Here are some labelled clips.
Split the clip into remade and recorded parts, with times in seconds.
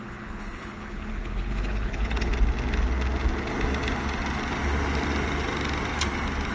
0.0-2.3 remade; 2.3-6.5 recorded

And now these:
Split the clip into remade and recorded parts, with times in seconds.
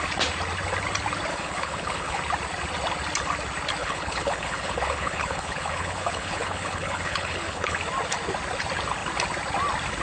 0.0-1.3 recorded; 1.3-2.2 remade; 2.2-3.8 recorded; 3.8-7.8 remade; 7.8-10.0 recorded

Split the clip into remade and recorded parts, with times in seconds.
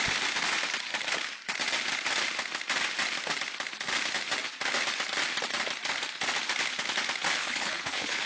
0.0-7.4 recorded; 7.4-8.3 remade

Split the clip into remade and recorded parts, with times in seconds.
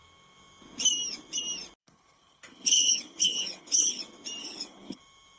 0.0-1.8 recorded; 1.8-4.0 remade; 4.0-4.4 recorded; 4.4-5.0 remade; 5.0-5.4 recorded